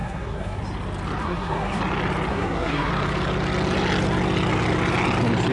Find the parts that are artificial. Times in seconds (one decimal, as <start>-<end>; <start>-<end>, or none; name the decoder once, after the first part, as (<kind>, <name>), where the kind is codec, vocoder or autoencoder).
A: 0.0-0.6 (codec, SNAC); 1.2-1.8; 2.3-2.9